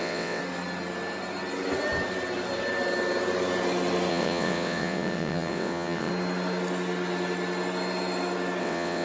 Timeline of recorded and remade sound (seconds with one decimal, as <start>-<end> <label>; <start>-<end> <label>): 0.0-0.4 remade; 0.4-4.1 recorded; 4.1-6.1 remade; 6.1-8.6 recorded; 8.6-9.0 remade